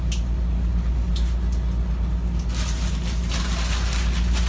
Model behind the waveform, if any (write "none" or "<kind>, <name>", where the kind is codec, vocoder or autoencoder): none